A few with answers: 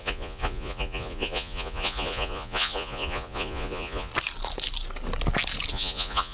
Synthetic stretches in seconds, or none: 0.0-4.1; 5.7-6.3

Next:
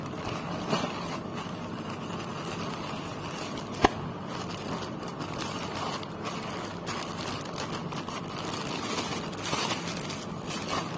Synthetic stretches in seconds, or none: none

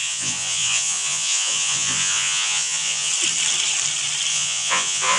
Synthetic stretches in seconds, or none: 0.0-3.1; 4.3-5.2

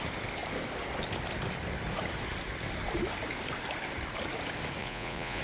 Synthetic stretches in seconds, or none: 4.8-5.4

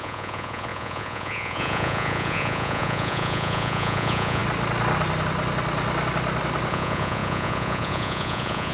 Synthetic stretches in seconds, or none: 0.0-4.4; 6.7-8.7

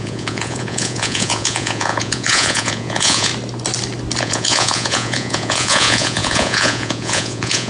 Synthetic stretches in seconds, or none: 0.0-3.3; 4.2-7.7

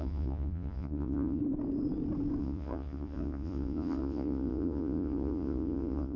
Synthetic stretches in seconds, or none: 0.0-1.4; 2.4-6.2